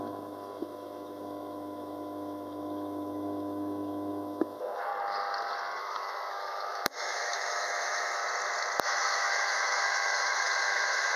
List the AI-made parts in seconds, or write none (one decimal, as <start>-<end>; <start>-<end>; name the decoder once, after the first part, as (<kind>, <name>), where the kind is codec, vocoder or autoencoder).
0.0-4.9 (autoencoder, DAC-VAE); 5.8-8.2; 8.8-11.2